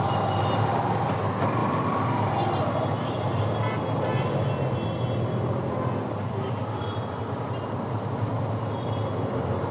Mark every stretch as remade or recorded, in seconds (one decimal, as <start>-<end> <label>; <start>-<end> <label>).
0.0-9.7 recorded